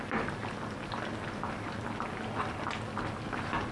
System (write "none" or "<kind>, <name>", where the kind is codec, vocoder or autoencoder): none